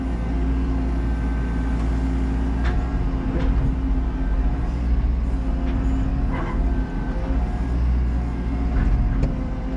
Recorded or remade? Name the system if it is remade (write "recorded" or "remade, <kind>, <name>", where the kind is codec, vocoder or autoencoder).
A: recorded